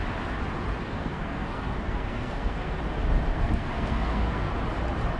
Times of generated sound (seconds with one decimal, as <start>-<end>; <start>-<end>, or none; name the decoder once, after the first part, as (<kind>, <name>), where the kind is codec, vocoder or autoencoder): 0.8-2.8 (codec, SNAC); 3.3-4.5